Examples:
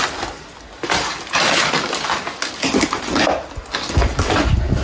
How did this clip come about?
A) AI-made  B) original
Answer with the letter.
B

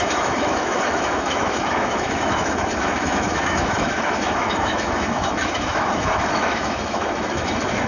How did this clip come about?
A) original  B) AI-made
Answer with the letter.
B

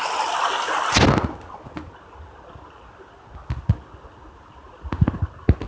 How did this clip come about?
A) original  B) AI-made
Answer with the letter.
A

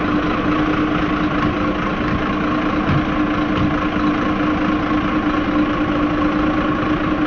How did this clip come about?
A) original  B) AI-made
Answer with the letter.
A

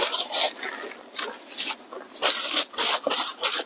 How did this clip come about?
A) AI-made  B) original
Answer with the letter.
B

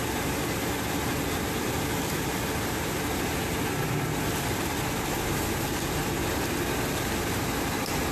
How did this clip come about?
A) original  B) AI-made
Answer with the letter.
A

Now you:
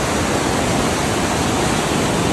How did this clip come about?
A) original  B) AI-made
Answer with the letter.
A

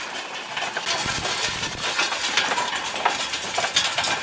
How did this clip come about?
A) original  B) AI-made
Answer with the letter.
A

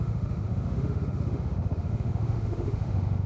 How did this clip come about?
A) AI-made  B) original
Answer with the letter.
A